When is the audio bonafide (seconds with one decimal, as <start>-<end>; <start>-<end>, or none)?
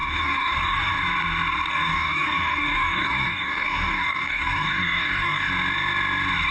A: 0.9-1.7; 5.5-6.5